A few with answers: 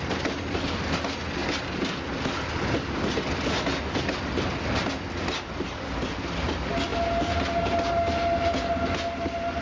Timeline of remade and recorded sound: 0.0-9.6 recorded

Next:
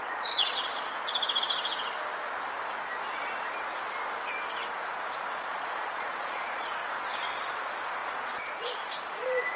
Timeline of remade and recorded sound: 0.0-0.9 remade; 0.9-5.3 recorded; 5.3-6.8 remade; 6.8-7.4 recorded; 7.4-9.6 remade

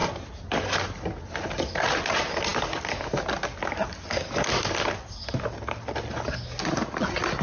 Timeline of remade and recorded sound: 0.0-7.4 recorded